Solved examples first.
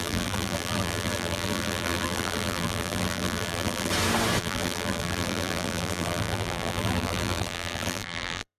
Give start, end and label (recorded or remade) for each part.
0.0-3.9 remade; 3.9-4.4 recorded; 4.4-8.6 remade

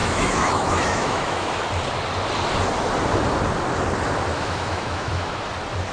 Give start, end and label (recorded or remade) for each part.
0.0-1.6 remade; 1.6-4.3 recorded; 4.3-5.4 remade; 5.4-5.9 recorded

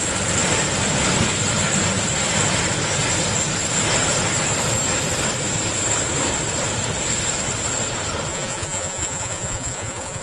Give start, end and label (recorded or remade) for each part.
0.0-8.3 recorded; 8.3-10.2 remade

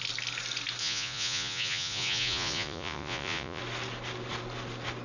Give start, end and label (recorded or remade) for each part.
0.0-0.8 recorded; 0.8-3.6 remade; 3.6-5.0 recorded